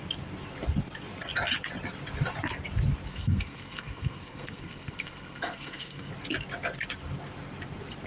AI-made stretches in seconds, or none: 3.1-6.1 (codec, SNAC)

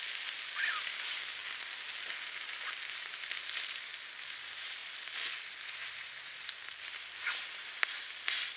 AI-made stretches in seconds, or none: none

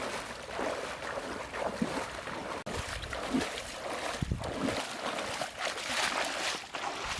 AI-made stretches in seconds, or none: none

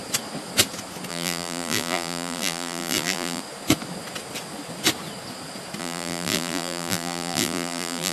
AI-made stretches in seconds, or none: 1.1-3.4 (vocoder, BigVGAN v2); 5.8-8.1